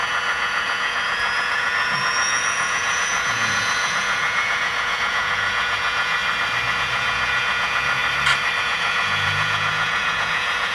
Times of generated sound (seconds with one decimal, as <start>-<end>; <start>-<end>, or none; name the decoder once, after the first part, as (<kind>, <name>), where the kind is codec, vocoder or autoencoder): 0.0-6.2 (vocoder, Vocos); 6.7-8.0; 8.6-10.7